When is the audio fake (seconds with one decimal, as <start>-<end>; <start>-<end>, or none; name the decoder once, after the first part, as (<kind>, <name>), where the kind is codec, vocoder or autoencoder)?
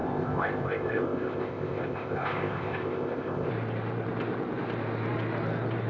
0.0-3.5 (codec, ZipCodec)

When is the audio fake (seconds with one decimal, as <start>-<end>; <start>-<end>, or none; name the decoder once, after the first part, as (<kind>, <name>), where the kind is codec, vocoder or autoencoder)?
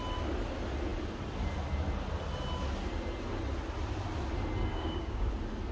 4.7-5.3 (codec, DAC)